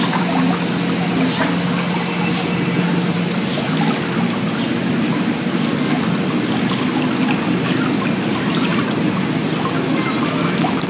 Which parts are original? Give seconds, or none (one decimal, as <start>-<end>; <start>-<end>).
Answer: 0.0-8.7; 9.4-10.9